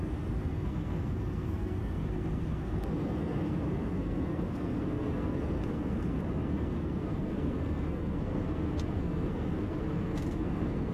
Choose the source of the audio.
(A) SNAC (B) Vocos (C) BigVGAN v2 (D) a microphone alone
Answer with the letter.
A